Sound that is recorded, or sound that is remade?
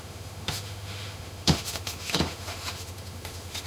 remade